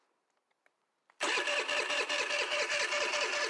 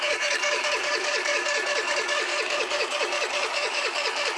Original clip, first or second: first